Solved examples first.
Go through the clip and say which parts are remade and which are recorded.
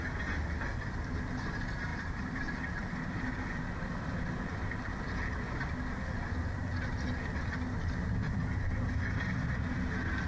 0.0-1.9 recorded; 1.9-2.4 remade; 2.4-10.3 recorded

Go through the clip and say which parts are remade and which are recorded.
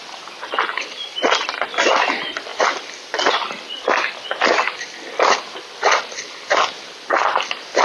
0.0-7.8 remade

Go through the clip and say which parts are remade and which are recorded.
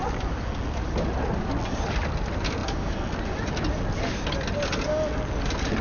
0.0-2.6 recorded; 2.6-3.1 remade; 3.1-5.8 recorded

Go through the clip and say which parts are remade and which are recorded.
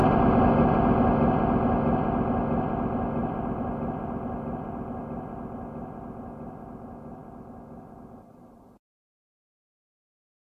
0.0-3.2 recorded; 3.2-5.0 remade; 5.0-10.4 recorded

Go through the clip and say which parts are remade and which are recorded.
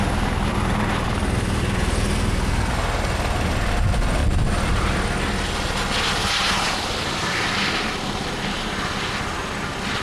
0.0-6.2 recorded; 6.2-8.6 remade; 8.6-10.0 recorded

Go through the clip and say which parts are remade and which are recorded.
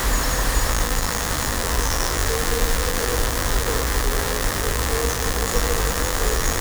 0.0-0.7 recorded; 0.7-6.6 remade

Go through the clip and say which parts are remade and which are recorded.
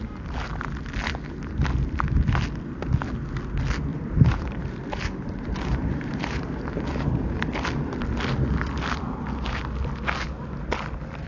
0.0-3.9 recorded; 3.9-7.5 remade; 7.5-11.3 recorded